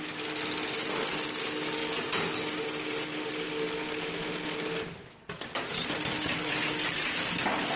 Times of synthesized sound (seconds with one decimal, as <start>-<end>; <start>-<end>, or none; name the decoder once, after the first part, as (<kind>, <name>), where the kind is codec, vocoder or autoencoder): none